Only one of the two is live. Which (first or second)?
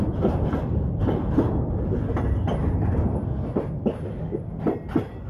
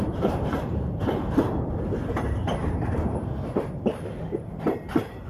first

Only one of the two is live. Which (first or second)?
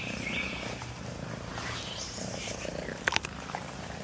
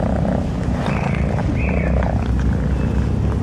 second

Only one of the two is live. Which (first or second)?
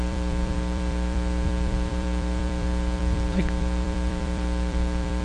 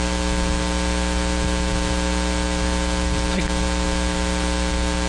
second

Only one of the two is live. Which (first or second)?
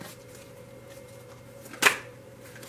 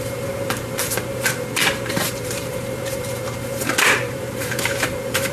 first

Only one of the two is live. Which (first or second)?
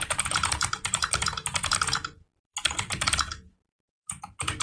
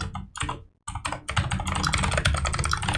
second